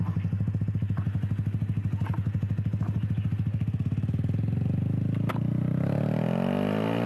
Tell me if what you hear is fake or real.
real